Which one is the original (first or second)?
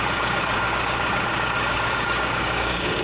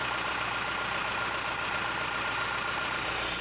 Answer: second